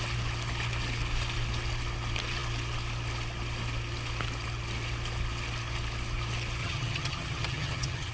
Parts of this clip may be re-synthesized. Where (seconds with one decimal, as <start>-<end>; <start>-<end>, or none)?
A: 6.6-8.1